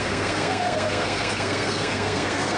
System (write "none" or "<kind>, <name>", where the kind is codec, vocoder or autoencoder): codec, SNAC